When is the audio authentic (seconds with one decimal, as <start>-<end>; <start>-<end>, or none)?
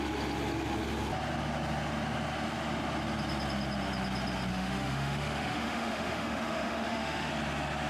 0.0-4.5; 7.3-7.9